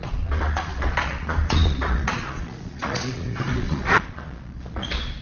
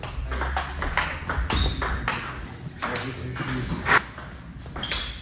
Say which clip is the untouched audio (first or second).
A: second